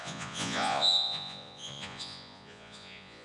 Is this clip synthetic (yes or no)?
yes